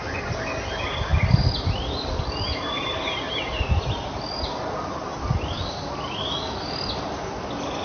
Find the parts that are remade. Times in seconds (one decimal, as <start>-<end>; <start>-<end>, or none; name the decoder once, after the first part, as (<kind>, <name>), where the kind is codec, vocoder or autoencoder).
none